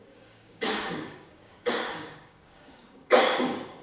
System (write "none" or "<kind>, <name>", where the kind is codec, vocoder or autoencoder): codec, DAC